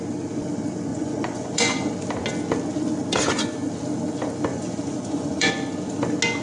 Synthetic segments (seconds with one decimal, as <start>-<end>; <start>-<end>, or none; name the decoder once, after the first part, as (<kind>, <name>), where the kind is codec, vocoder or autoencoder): 0.9-1.9 (vocoder, Vocos); 4.5-5.5